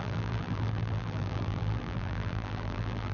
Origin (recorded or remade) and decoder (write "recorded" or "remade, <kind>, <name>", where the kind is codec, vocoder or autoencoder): remade, vocoder, BigVGAN v2